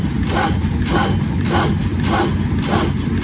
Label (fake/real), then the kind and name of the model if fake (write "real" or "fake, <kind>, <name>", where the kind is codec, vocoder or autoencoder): real